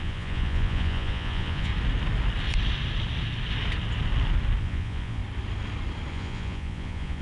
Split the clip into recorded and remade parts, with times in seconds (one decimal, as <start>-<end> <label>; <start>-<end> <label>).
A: 0.0-1.7 remade; 1.7-4.6 recorded; 4.6-5.2 remade; 5.2-6.1 recorded; 6.1-7.2 remade